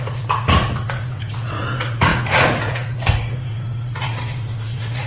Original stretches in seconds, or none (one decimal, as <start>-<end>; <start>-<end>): none